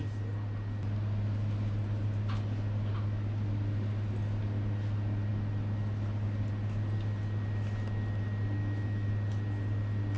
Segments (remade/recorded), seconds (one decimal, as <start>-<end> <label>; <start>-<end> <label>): 0.0-8.6 recorded; 8.6-9.1 remade; 9.1-10.2 recorded